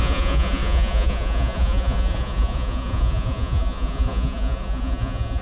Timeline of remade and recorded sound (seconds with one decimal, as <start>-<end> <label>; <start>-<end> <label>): 0.0-5.4 remade